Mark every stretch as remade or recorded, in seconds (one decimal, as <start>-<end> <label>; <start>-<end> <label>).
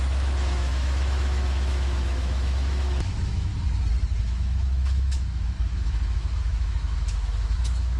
0.0-3.5 remade; 3.5-4.2 recorded; 4.2-8.0 remade